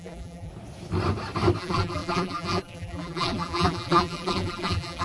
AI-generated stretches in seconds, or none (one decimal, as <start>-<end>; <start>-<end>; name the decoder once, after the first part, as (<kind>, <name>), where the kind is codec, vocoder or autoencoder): 0.0-0.5 (vocoder, BigVGAN v2); 1.6-5.0